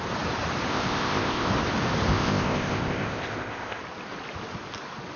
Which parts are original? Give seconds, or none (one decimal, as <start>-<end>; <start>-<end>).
0.0-0.7; 1.5-2.1; 3.8-5.2